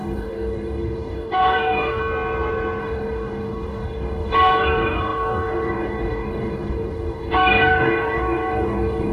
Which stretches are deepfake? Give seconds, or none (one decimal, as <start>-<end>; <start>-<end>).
0.0-2.0; 2.8-9.1